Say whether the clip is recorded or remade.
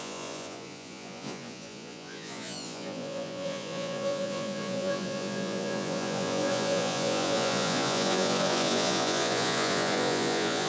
remade